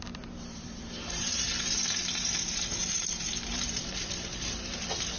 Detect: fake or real fake